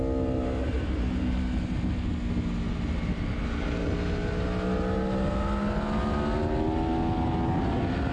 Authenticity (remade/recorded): recorded